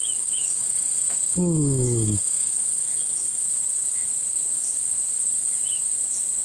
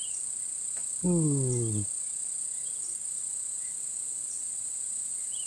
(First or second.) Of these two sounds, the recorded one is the second